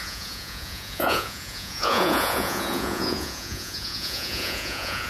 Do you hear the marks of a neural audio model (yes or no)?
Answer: yes